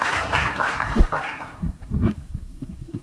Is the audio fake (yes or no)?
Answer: yes